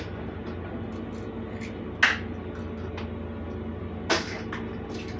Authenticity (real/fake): real